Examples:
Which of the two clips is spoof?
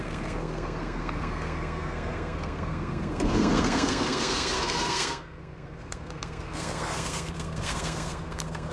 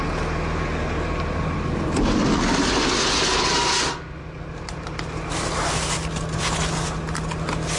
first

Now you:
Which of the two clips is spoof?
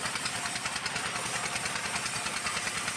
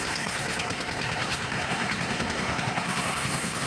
second